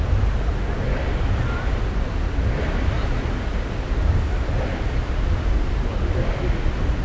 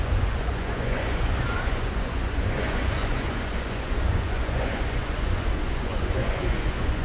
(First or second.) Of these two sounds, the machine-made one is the second